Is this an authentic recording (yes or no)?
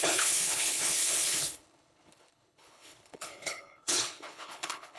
no